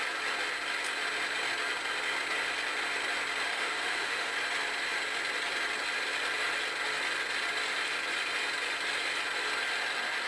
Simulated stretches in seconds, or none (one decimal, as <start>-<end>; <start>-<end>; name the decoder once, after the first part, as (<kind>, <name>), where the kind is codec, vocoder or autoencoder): 3.5-4.3 (autoencoder, DAC-VAE)